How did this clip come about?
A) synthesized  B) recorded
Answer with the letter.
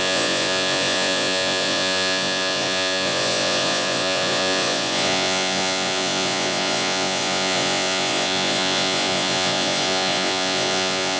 A